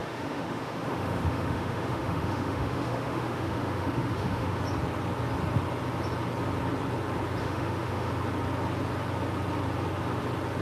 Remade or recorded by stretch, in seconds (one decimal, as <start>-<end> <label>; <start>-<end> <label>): 0.0-4.6 remade; 4.6-7.4 recorded; 7.4-8.1 remade; 8.1-10.6 recorded